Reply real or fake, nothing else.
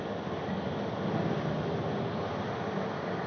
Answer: real